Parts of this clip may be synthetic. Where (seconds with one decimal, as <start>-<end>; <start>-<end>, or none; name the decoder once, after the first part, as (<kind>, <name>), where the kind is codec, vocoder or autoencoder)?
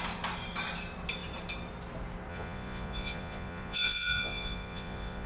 2.3-5.3 (vocoder, Vocos)